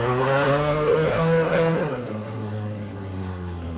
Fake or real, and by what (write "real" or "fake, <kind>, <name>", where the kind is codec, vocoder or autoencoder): fake, codec, SNAC